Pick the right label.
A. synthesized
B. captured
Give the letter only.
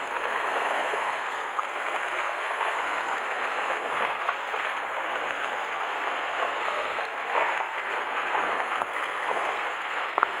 A